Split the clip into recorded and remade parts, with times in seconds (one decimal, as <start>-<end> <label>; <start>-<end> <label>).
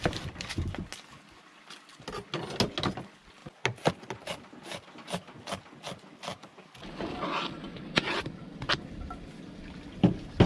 0.0-10.5 recorded